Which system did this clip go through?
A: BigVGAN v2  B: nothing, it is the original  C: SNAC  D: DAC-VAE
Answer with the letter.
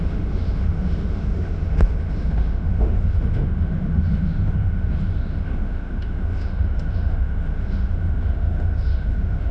D